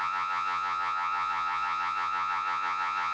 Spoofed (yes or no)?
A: yes